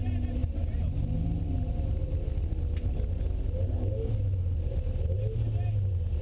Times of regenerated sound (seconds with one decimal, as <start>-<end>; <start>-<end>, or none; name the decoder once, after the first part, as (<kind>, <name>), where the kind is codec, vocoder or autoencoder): none